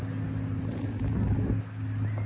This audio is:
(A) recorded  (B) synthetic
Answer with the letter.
A